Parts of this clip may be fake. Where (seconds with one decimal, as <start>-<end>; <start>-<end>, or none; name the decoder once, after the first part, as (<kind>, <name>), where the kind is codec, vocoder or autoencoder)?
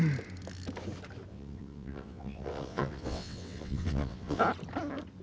1.3-4.4 (vocoder, WaveNeXt)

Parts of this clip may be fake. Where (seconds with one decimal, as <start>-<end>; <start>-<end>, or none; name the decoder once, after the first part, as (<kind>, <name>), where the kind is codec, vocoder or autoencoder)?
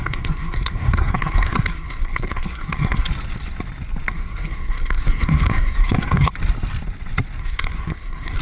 0.0-3.1 (codec, SNAC); 4.1-6.3; 7.4-8.4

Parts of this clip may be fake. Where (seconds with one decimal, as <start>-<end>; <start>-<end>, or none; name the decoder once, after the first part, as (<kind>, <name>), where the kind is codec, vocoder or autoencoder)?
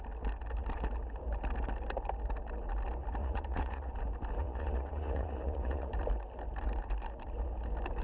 3.2-3.9 (vocoder, Vocos); 4.4-5.9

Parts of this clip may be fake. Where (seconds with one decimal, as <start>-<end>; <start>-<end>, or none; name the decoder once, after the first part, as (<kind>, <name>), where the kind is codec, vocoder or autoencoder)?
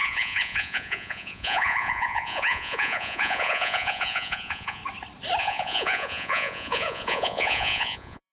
0.0-4.8 (vocoder, Vocos); 5.4-8.3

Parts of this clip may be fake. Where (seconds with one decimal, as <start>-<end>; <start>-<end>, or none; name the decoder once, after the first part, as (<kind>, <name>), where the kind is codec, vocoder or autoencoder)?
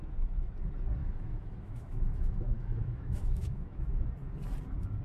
1.0-4.0 (autoencoder, DAC-VAE)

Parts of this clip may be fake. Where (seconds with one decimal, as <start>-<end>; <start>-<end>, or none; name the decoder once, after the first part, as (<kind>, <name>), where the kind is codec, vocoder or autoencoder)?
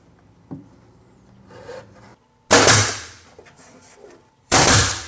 0.0-2.1 (vocoder, BigVGAN v2); 2.9-5.1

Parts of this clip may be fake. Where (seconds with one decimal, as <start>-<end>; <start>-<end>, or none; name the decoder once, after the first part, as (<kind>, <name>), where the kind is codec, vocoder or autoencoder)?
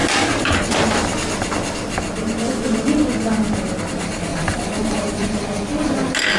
4.3-5.4 (vocoder, BigVGAN v2)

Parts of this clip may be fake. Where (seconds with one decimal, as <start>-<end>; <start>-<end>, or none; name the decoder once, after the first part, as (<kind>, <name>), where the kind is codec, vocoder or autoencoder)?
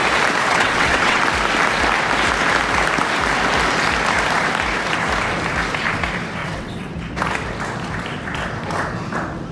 0.5-1.2 (vocoder, WaveNeXt); 6.4-6.9